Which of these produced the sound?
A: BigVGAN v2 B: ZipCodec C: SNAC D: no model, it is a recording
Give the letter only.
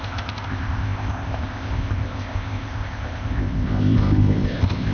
B